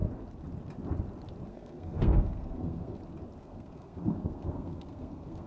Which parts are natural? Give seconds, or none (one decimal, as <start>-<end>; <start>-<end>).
0.0-1.5; 3.0-3.4